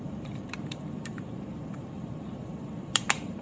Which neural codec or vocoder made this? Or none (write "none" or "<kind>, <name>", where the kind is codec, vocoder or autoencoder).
vocoder, BigVGAN v2